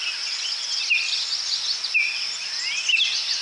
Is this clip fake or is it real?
real